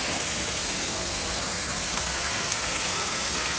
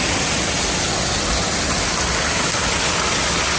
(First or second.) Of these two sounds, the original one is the second